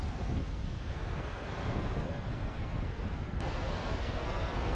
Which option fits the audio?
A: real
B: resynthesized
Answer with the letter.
B